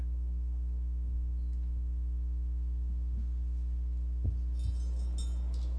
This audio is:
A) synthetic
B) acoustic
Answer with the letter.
B